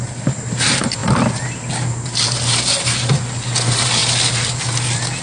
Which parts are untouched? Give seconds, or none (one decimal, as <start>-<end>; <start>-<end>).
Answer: 0.0-5.2